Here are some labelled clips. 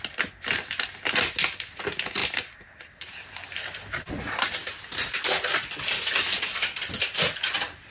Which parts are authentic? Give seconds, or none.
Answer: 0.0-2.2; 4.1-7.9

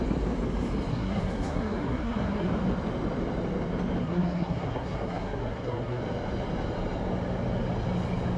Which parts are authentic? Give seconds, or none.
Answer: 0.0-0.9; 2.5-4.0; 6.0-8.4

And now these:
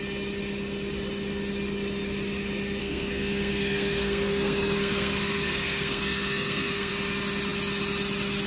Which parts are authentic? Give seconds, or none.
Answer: 0.0-2.8; 6.9-8.5